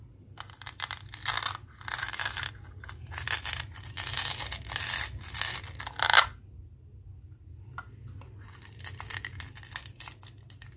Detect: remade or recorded recorded